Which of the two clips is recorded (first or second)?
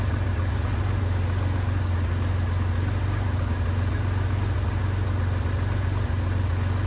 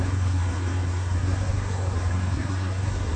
first